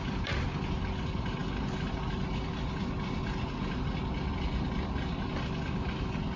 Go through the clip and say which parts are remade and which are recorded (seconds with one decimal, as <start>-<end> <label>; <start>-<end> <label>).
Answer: 0.0-6.4 recorded